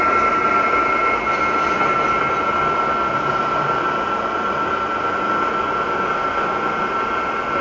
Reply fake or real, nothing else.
real